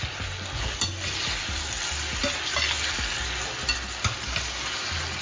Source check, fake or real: real